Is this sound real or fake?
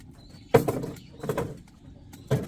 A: fake